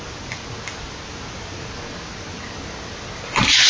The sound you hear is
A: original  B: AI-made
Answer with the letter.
A